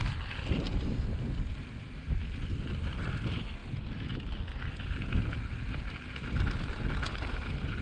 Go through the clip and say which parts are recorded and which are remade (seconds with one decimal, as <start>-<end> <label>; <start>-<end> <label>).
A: 0.0-7.8 recorded